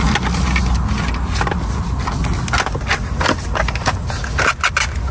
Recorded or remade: recorded